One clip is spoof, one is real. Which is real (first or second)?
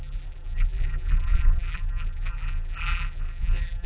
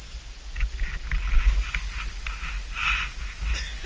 second